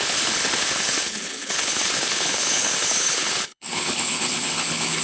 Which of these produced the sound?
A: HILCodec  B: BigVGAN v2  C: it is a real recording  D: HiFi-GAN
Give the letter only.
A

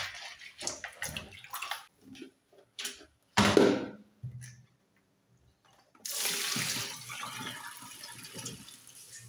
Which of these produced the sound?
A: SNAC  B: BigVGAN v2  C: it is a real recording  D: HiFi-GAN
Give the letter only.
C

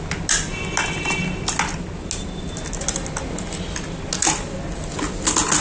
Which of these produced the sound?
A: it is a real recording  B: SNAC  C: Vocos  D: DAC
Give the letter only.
A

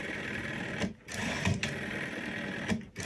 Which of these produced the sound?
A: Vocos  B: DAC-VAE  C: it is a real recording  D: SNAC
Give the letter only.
C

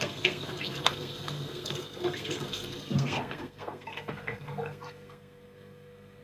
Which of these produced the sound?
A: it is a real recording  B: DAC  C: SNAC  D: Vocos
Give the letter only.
C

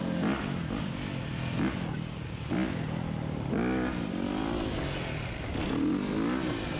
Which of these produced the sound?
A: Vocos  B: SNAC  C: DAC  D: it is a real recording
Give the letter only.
D